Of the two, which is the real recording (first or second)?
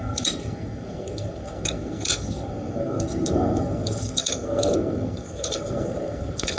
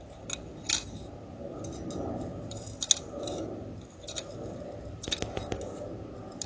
second